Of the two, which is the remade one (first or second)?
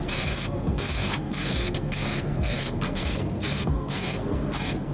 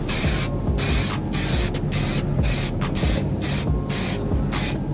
first